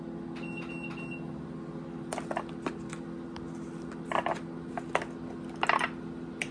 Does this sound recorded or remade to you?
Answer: recorded